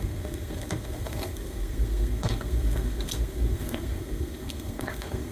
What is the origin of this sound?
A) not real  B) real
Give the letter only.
A